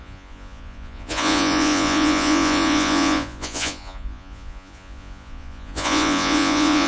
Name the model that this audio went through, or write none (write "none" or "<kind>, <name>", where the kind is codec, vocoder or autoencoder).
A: vocoder, Vocos